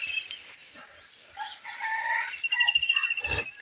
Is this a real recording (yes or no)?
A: no